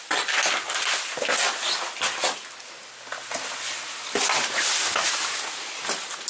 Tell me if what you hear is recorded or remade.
recorded